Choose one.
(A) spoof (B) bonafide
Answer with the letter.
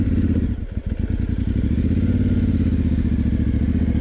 B